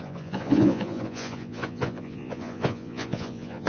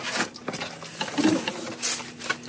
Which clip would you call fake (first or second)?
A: first